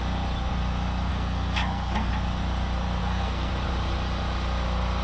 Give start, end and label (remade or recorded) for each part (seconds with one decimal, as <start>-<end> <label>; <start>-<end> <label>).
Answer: 0.0-1.1 recorded; 1.1-2.1 remade; 2.1-3.0 recorded; 3.0-3.5 remade; 3.5-5.0 recorded